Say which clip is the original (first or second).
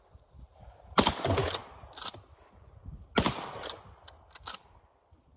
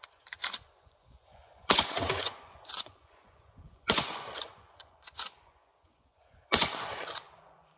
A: first